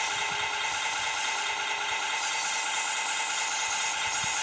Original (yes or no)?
yes